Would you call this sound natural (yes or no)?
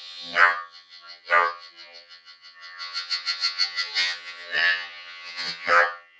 no